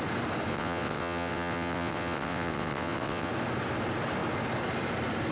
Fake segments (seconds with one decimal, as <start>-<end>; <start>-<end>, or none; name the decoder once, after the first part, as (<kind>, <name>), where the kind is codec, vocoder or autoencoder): 0.5-3.3 (vocoder, WaveNeXt)